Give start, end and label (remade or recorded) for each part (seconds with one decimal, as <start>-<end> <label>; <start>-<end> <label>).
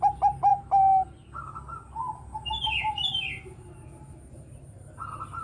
0.0-5.4 recorded